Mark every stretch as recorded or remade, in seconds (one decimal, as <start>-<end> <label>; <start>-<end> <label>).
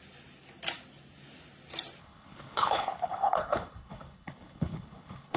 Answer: 0.0-2.0 recorded; 2.0-5.4 remade